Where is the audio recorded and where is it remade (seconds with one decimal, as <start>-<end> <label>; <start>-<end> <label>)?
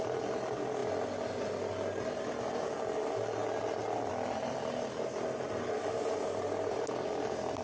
0.0-7.6 recorded